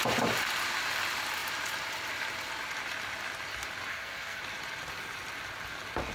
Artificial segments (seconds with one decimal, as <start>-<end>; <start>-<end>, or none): 3.9-4.4